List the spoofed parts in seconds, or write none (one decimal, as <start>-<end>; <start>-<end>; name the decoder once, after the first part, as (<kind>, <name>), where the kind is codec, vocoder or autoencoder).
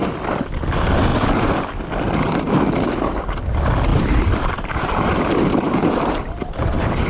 3.9-7.1 (vocoder, BigVGAN v2)